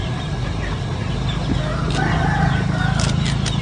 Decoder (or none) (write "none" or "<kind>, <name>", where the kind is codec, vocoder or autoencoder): none